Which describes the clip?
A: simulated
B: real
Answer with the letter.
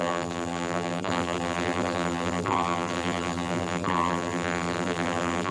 A